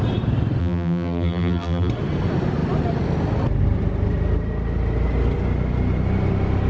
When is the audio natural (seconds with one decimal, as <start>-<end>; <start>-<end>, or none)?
0.0-0.6; 1.9-6.7